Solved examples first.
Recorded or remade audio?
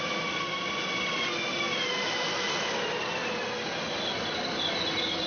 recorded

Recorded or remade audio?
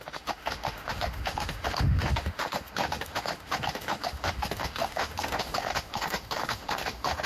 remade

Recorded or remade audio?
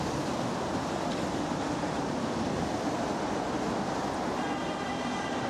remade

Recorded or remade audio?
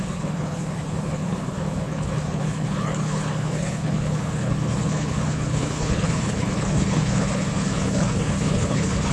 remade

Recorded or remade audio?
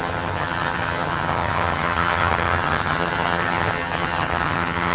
remade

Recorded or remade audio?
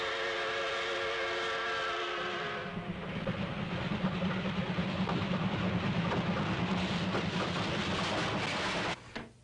recorded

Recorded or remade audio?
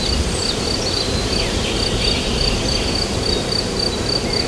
recorded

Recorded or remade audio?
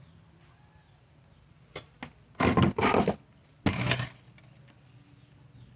recorded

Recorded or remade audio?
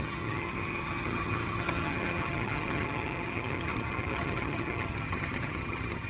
remade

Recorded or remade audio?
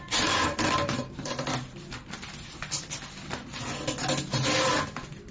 recorded